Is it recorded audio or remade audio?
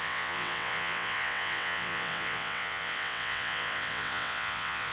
remade